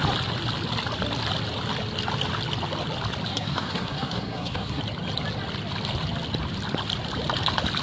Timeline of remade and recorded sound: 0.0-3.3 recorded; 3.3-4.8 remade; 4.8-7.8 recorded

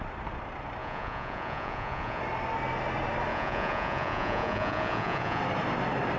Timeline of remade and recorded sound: 0.0-0.8 recorded; 0.8-2.2 remade; 2.2-3.3 recorded; 3.3-5.4 remade; 5.4-6.2 recorded

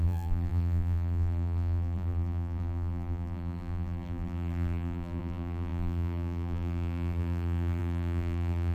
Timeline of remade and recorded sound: 0.0-8.7 remade

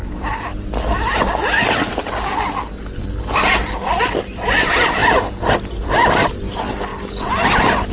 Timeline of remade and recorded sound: 0.0-7.9 recorded

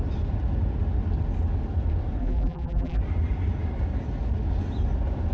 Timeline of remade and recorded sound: 0.0-2.2 recorded; 2.2-3.0 remade; 3.0-5.3 recorded

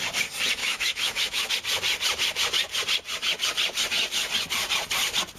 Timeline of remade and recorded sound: 0.0-0.6 recorded; 0.6-1.5 remade; 1.5-5.4 recorded

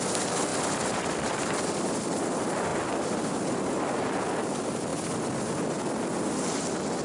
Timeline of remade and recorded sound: 0.0-0.5 recorded; 0.5-1.9 remade; 1.9-7.0 recorded

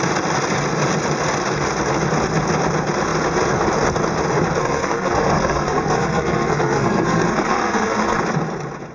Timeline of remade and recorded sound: 0.0-4.6 recorded; 4.6-8.2 remade; 8.2-8.9 recorded